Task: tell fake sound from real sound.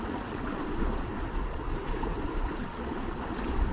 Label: fake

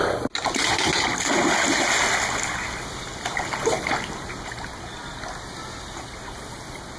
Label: real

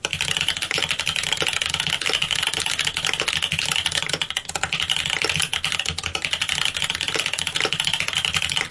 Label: real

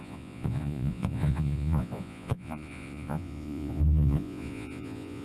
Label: fake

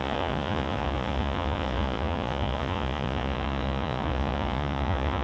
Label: fake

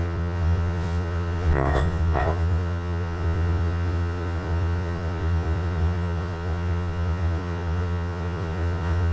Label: fake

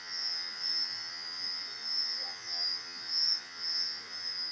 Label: fake